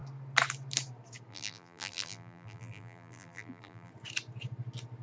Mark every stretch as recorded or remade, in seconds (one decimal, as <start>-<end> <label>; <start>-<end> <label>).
0.0-1.3 recorded; 1.3-3.9 remade; 3.9-5.0 recorded